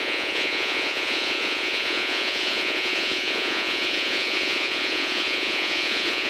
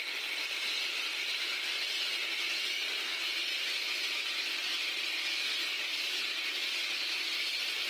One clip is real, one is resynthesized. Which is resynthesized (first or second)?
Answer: first